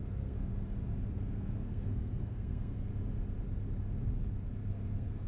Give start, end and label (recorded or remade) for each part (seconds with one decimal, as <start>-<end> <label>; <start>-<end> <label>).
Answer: 0.0-0.5 remade; 0.5-1.1 recorded; 1.1-2.9 remade; 2.9-4.7 recorded; 4.7-5.3 remade